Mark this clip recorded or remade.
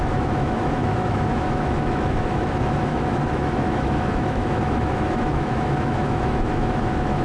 remade